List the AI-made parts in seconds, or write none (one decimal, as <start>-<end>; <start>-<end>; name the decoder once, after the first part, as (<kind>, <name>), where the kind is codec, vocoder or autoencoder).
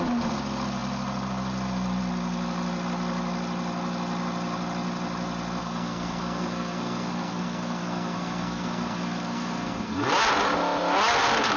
5.6-10.1 (codec, SNAC)